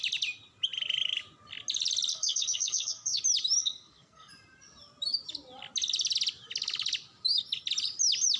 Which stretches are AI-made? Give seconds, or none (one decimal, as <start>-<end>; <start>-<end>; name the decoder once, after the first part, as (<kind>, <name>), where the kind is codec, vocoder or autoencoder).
2.1-3.2 (codec, SNAC); 3.6-4.3